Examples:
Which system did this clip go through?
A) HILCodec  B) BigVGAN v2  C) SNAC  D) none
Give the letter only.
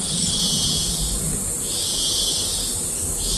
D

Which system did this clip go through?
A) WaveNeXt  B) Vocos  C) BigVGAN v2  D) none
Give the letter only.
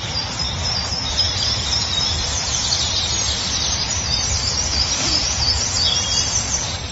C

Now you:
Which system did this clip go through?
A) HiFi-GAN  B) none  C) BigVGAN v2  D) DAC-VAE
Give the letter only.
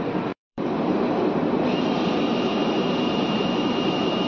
C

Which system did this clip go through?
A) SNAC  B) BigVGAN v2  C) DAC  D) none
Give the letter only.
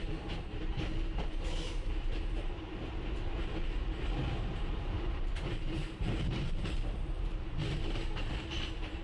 B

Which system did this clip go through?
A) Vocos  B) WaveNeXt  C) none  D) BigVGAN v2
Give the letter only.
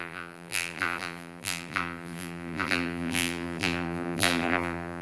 D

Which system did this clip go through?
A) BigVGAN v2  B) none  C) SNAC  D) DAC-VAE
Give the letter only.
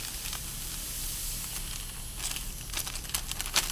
B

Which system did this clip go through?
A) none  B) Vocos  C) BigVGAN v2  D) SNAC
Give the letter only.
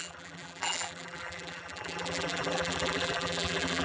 C